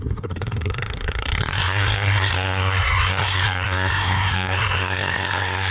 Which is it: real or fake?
fake